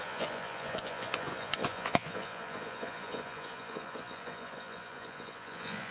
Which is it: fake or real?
fake